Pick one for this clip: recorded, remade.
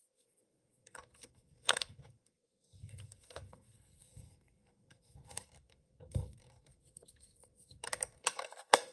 remade